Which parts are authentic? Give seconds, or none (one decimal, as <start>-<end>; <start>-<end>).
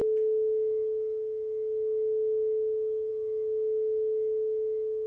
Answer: 0.0-5.1